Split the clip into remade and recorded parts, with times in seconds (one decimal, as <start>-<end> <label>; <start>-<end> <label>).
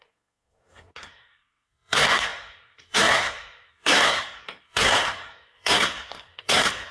0.0-6.9 remade